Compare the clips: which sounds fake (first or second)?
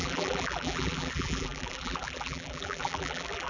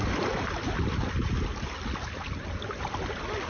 first